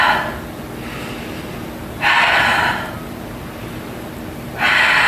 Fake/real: real